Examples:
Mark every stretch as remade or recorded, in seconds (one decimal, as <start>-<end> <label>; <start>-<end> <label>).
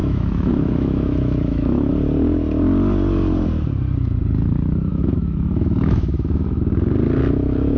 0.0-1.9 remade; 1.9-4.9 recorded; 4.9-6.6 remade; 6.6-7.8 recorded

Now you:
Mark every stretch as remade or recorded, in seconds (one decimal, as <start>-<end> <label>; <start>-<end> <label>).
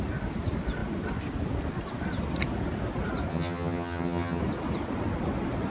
0.0-3.3 recorded; 3.3-4.4 remade; 4.4-5.7 recorded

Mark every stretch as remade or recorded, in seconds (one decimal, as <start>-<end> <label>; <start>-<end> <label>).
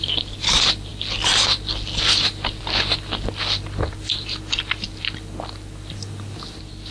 0.0-6.9 recorded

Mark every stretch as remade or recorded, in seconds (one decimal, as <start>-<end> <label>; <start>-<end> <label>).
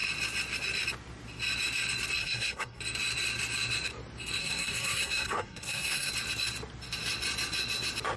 0.0-2.2 recorded; 2.2-2.8 remade; 2.8-4.4 recorded; 4.4-6.1 remade; 6.1-8.2 recorded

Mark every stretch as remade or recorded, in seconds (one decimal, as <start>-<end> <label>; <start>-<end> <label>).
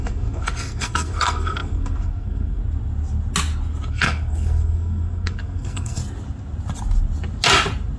0.0-2.6 remade; 2.6-3.9 recorded; 3.9-6.0 remade; 6.0-8.0 recorded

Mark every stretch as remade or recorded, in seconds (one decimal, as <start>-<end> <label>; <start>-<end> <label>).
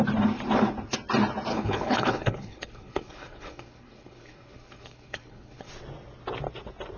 0.0-1.5 recorded; 1.5-5.7 remade; 5.7-7.0 recorded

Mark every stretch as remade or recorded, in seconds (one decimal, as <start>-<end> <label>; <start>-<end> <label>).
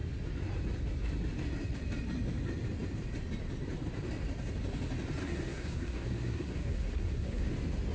0.0-5.2 recorded; 5.2-7.5 remade; 7.5-7.9 recorded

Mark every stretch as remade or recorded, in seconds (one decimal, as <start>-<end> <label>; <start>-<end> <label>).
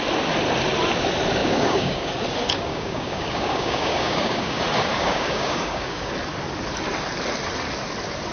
0.0-1.4 recorded; 1.4-2.1 remade; 2.1-2.7 recorded; 2.7-4.6 remade; 4.6-5.0 recorded; 5.0-6.1 remade; 6.1-8.3 recorded